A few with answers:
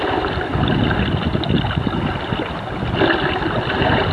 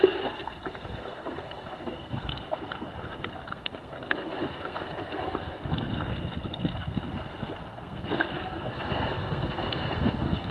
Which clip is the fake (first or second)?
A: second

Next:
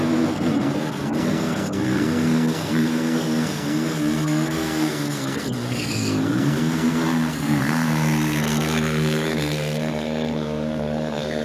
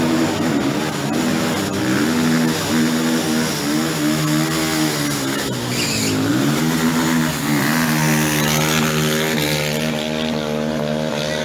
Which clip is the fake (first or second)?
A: first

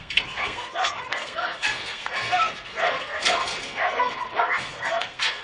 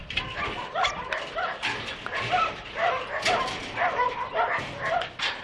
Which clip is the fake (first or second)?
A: first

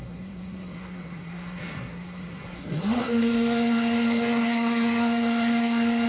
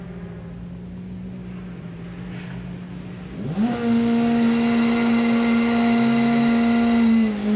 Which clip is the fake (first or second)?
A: first